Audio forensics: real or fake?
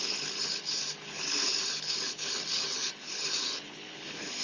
fake